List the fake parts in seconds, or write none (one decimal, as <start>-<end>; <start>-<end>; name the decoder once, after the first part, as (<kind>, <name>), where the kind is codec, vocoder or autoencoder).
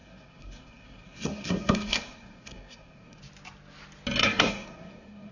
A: 0.0-3.2 (codec, SNAC); 4.2-5.3